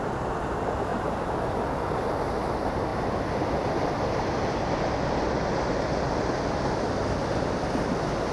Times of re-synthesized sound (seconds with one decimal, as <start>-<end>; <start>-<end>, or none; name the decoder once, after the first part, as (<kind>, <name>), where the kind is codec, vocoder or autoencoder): none